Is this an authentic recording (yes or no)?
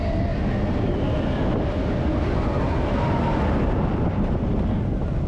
yes